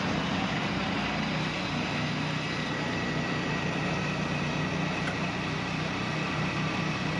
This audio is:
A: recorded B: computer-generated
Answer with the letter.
A